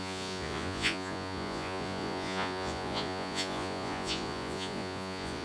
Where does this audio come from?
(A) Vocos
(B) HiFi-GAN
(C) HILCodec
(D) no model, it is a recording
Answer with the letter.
A